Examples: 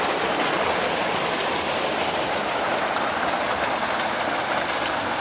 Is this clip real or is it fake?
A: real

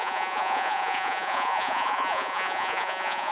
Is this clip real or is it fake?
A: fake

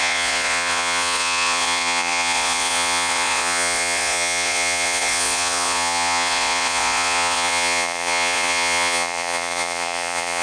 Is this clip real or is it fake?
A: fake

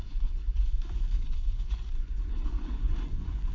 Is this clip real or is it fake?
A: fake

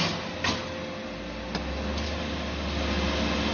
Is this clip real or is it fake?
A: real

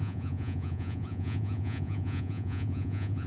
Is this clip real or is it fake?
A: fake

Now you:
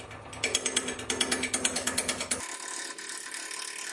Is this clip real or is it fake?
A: real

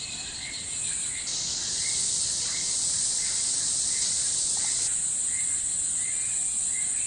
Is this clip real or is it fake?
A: real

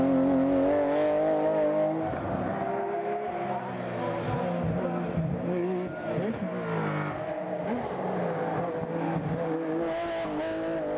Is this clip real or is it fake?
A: real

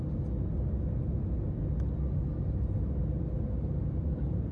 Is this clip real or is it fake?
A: real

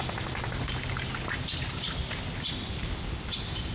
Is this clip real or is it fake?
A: real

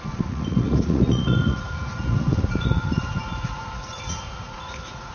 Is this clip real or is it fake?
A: fake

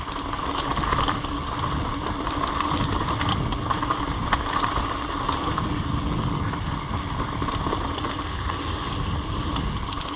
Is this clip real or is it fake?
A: real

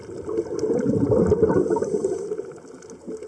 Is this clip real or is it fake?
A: real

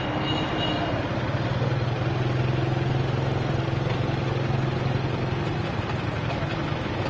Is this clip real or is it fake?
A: real